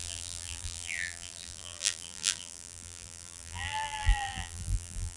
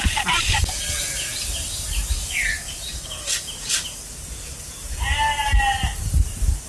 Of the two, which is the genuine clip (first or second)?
second